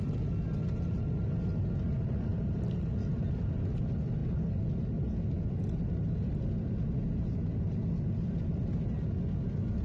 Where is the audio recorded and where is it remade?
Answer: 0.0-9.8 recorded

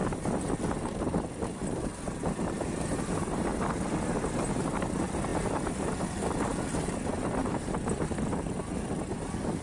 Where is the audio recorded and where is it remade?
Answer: 0.0-7.4 recorded; 7.4-8.6 remade; 8.6-9.6 recorded

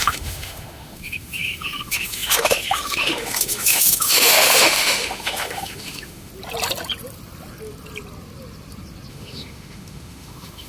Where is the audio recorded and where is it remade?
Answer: 0.0-6.3 remade; 6.3-9.1 recorded; 9.1-10.7 remade

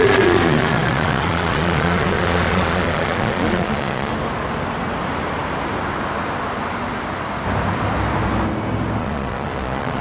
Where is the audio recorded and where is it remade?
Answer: 0.0-4.1 remade; 4.1-9.0 recorded; 9.0-10.0 remade

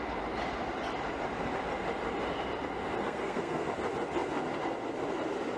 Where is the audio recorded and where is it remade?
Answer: 0.0-3.0 recorded; 3.0-3.7 remade; 3.7-5.6 recorded

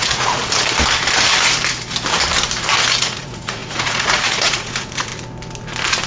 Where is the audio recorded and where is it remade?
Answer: 0.0-0.4 remade; 0.4-3.0 recorded; 3.0-5.1 remade; 5.1-6.1 recorded

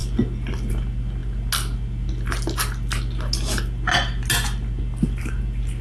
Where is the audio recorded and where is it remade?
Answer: 0.0-5.8 recorded